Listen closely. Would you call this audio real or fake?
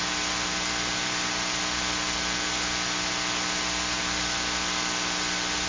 real